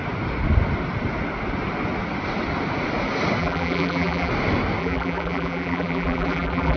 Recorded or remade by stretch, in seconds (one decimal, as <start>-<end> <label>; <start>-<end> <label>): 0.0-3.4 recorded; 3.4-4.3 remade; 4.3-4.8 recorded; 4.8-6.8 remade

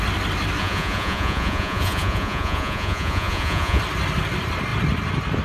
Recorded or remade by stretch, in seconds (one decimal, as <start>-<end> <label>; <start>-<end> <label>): 0.0-0.6 recorded; 0.6-3.8 remade; 3.8-5.4 recorded

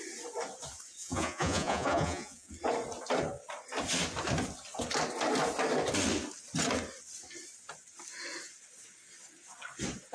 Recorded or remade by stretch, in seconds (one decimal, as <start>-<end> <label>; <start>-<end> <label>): 0.0-1.0 recorded; 1.0-2.5 remade; 2.5-10.1 recorded

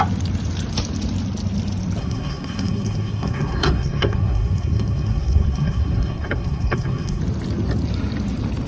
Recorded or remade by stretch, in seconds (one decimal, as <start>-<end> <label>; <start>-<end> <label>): 0.0-2.0 recorded; 2.0-7.2 remade; 7.2-8.7 recorded